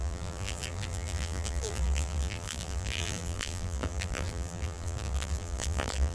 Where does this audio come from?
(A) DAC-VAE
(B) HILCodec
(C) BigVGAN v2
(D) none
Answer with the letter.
C